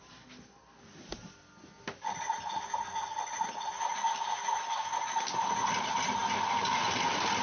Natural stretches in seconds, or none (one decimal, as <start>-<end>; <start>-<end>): 0.0-7.4